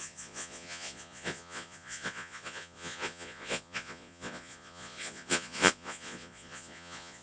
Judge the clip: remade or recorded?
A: remade